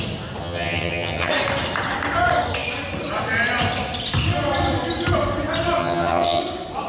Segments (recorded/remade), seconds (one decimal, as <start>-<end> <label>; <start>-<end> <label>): 0.0-0.4 recorded; 0.4-1.3 remade; 1.3-5.8 recorded; 5.8-6.4 remade; 6.4-6.9 recorded